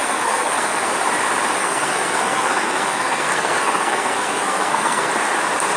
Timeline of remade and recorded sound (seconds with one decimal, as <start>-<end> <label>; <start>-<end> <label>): 0.0-0.9 remade; 0.9-1.6 recorded; 1.6-5.1 remade; 5.1-5.8 recorded